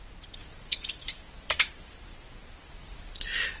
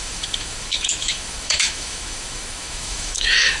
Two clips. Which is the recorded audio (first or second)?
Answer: first